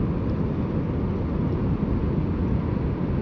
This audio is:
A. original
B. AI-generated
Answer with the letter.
A